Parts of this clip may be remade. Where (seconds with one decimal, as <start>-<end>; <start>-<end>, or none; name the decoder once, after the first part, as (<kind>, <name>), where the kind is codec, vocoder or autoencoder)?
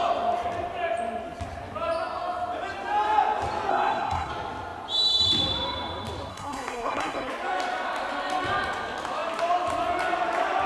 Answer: 3.7-4.3 (codec, SNAC); 6.3-7.3